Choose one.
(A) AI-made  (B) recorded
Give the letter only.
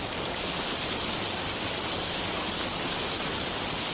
B